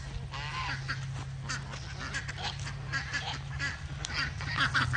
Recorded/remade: recorded